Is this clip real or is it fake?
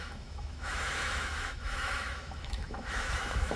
fake